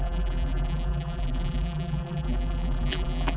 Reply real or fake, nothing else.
fake